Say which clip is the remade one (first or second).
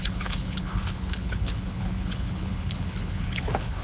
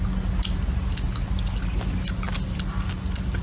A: first